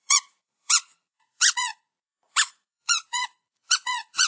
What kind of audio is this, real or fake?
fake